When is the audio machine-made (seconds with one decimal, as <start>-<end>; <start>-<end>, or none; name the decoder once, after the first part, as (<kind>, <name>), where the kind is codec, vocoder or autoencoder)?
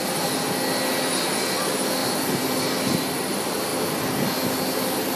2.0-2.6 (vocoder, BigVGAN v2)